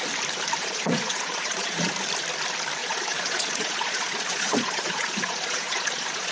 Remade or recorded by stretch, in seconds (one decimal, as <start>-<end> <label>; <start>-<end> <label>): 0.0-0.6 recorded; 0.6-1.9 remade; 1.9-2.8 recorded; 2.8-6.3 remade